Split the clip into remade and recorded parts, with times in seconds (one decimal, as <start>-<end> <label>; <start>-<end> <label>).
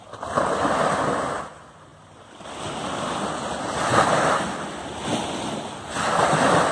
0.0-6.7 recorded